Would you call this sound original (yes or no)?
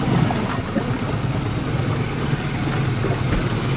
yes